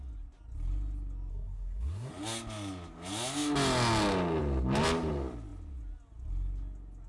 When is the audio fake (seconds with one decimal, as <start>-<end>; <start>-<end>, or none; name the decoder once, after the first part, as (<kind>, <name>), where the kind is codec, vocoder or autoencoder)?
1.3-2.1 (codec, SNAC)